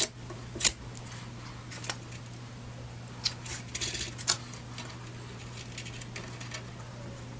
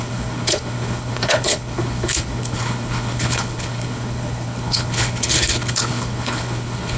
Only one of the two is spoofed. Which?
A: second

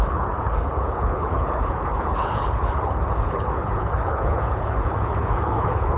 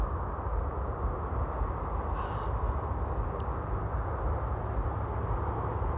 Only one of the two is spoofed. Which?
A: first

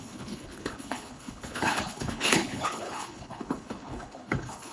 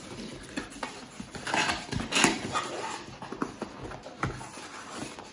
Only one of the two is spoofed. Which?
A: first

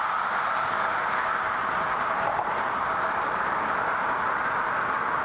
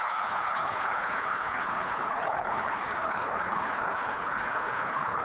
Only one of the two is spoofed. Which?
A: second